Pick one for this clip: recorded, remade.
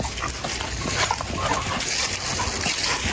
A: recorded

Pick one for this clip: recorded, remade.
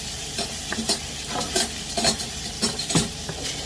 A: recorded